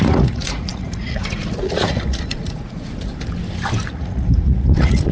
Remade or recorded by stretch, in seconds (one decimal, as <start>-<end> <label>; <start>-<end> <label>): 0.0-3.1 remade; 3.1-3.9 recorded; 3.9-5.1 remade